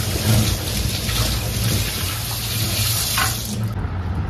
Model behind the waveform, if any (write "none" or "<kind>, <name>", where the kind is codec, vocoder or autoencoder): none